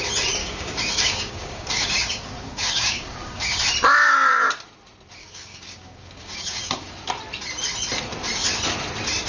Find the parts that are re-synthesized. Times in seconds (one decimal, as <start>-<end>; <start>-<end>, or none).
0.4-3.6; 5.2-7.0